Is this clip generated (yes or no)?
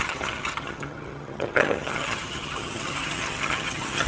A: yes